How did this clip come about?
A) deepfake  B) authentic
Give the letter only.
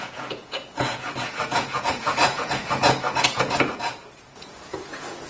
A